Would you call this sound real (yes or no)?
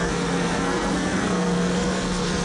no